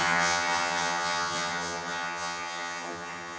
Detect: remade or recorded remade